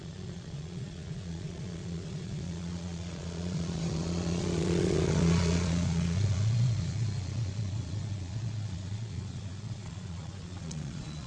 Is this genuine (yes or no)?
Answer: no